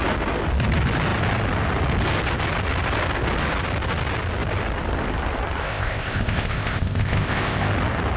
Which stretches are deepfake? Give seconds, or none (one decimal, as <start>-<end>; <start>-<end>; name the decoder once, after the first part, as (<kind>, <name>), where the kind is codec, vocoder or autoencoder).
5.6-7.7 (codec, ZipCodec)

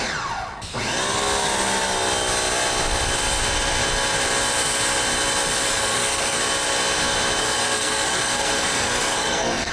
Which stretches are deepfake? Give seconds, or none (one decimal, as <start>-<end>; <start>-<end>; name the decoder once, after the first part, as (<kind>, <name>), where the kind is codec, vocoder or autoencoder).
5.7-6.4 (codec, SNAC); 7.4-9.7

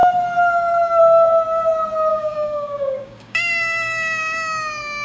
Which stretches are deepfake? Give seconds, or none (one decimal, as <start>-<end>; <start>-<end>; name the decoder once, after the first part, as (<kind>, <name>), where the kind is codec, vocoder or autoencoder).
2.1-3.5 (codec, DAC)